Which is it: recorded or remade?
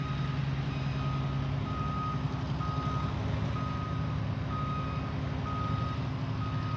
recorded